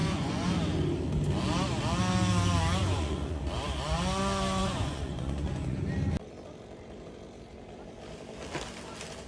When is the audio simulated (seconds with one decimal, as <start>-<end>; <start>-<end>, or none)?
0.0-0.5; 2.8-3.4; 4.6-5.9